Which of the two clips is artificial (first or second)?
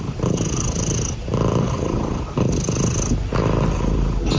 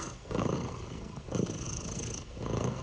second